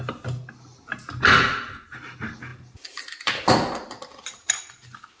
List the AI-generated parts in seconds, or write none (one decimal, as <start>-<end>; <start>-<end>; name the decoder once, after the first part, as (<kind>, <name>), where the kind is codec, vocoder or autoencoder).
none